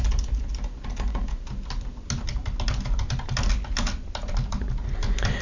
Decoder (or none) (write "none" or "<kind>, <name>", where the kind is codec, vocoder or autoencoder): none